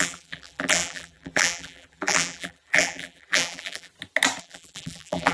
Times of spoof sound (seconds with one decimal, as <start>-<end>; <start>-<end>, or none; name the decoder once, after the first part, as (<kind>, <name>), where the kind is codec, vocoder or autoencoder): 0.0-3.9 (vocoder, BigVGAN v2); 4.4-5.3